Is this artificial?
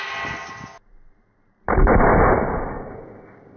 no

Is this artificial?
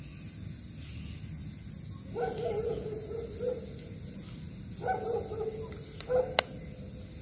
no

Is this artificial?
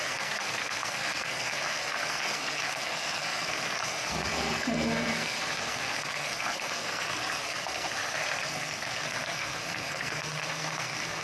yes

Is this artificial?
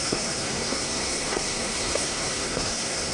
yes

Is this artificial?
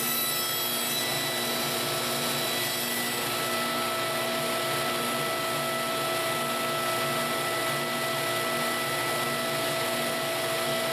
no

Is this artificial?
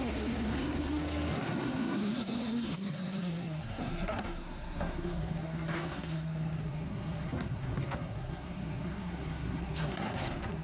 yes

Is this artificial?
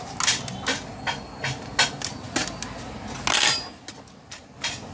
no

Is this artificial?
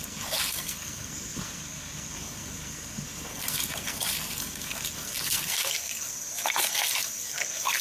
yes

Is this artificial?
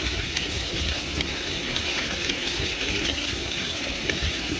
yes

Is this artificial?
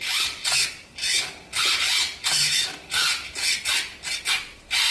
no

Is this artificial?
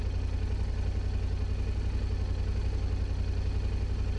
no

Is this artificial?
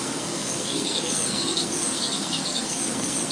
yes